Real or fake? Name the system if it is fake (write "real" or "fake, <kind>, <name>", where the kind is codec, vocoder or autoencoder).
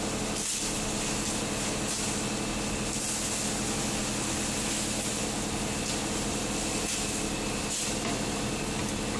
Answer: real